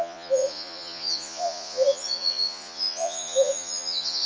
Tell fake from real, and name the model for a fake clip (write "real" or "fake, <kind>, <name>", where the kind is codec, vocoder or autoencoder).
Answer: fake, vocoder, Vocos